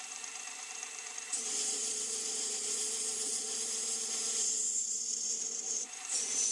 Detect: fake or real fake